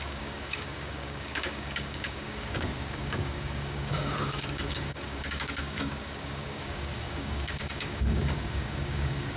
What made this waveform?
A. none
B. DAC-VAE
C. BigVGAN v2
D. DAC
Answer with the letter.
D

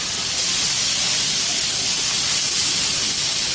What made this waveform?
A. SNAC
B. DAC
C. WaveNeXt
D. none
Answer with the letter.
D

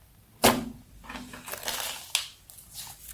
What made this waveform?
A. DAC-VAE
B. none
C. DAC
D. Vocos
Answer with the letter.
B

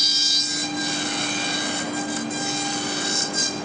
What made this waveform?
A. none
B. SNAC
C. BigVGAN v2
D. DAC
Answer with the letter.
A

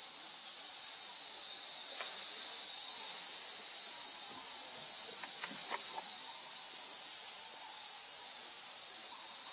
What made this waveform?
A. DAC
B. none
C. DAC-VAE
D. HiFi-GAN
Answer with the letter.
B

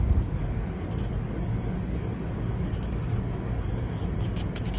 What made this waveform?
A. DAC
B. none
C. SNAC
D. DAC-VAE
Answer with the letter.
A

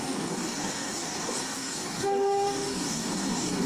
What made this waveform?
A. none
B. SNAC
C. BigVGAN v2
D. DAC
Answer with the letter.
D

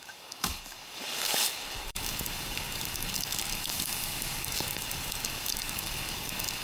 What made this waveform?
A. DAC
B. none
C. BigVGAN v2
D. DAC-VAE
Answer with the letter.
A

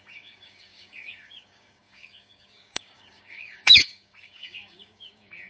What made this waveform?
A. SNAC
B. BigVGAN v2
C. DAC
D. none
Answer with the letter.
C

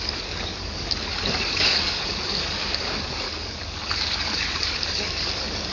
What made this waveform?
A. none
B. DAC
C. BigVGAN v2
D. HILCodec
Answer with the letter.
B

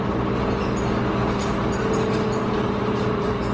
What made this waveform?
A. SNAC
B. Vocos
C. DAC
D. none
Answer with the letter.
D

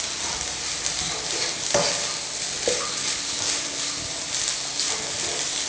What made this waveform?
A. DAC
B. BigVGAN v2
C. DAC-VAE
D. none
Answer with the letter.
D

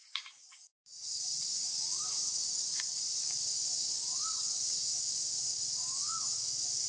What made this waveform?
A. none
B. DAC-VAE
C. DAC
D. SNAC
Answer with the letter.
C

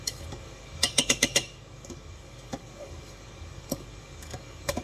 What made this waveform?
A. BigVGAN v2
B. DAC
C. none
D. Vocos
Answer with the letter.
B